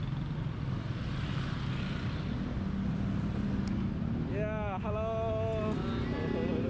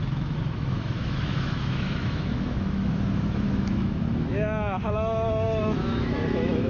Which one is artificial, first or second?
second